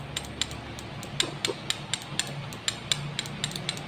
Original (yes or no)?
yes